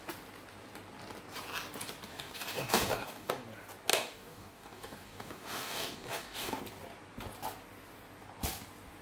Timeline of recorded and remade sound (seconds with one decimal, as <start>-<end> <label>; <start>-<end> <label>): 0.0-2.1 recorded; 2.1-3.3 remade; 3.3-3.9 recorded; 3.9-6.6 remade; 6.6-9.0 recorded